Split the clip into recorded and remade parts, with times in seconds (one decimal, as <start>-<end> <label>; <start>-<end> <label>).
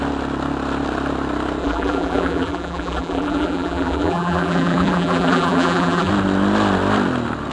0.0-1.6 recorded; 1.6-6.1 remade; 6.1-7.5 recorded